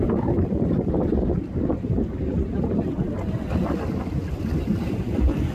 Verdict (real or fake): real